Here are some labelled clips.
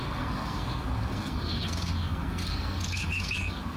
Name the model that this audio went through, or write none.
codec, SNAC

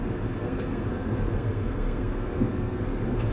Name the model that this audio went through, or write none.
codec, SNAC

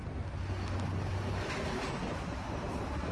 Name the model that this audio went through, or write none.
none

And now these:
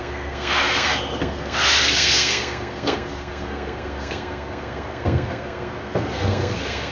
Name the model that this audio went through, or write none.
codec, SNAC